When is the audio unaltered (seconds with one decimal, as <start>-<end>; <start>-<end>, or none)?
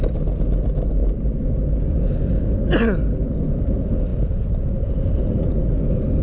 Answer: 0.0-6.2